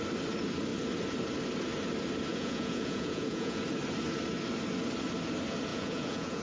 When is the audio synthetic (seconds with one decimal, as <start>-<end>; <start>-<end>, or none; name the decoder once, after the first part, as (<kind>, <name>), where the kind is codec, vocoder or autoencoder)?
2.3-3.6 (vocoder, Vocos); 5.7-6.4